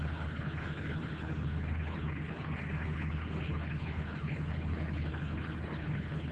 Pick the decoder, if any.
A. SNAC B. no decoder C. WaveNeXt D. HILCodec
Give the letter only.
D